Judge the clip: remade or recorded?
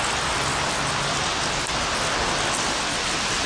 recorded